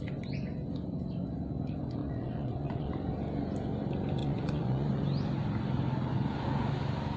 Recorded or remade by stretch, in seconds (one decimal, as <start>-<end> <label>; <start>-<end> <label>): 0.0-2.0 recorded; 2.0-2.9 remade; 2.9-4.2 recorded; 4.2-5.0 remade; 5.0-6.1 recorded; 6.1-6.7 remade; 6.7-7.2 recorded